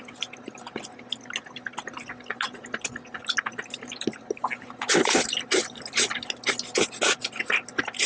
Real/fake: real